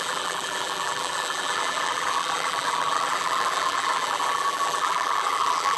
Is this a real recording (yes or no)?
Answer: no